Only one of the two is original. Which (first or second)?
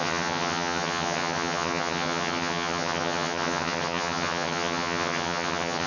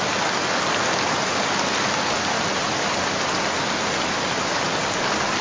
second